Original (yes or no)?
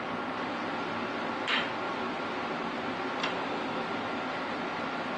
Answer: yes